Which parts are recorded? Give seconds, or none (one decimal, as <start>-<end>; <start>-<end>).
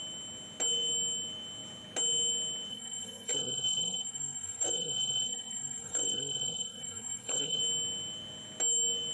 0.0-2.7; 7.6-9.1